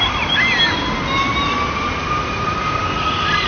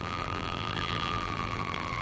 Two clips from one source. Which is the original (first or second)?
first